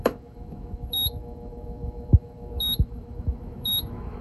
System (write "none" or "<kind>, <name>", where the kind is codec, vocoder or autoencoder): autoencoder, DAC-VAE